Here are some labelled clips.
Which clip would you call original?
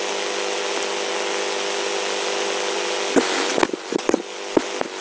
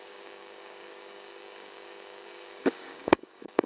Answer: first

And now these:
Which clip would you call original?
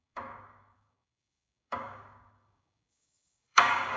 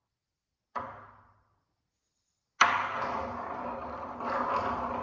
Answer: second